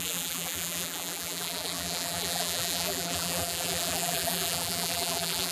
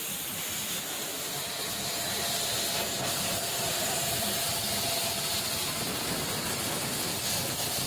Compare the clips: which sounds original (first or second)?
second